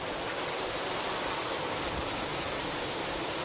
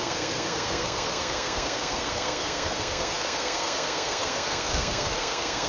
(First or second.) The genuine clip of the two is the first